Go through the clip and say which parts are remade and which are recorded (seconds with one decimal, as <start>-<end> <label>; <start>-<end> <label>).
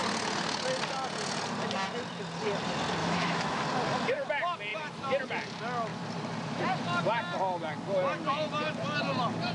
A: 0.0-3.0 recorded; 3.0-3.6 remade; 3.6-9.5 recorded